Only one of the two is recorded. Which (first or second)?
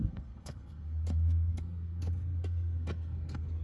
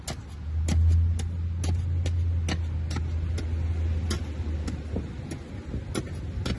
second